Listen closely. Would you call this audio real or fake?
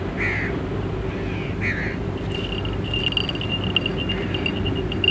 real